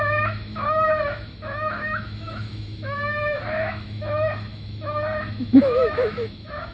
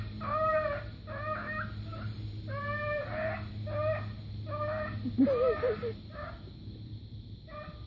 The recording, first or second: second